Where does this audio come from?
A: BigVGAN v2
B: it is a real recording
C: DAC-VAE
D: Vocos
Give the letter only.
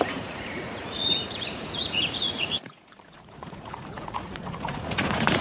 D